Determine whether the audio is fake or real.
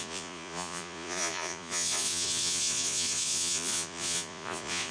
fake